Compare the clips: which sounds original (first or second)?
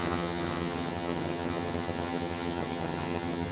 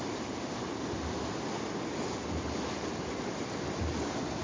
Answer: second